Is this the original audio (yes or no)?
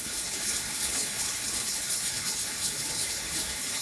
no